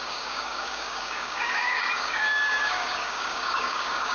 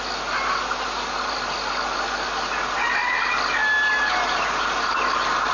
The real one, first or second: second